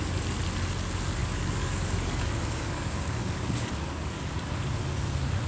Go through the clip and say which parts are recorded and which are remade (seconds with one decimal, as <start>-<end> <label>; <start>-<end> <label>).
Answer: 0.0-1.2 recorded; 1.2-4.5 remade; 4.5-5.5 recorded